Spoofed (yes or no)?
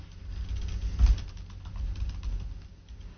no